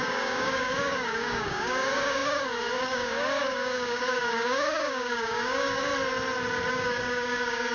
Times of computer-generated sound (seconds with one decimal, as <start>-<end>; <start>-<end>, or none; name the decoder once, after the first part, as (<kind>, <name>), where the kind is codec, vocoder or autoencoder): 0.0-5.9 (codec, DAC); 6.7-7.7